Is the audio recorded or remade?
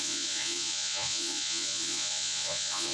remade